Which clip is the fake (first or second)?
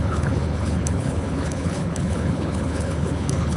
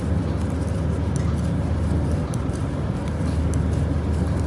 first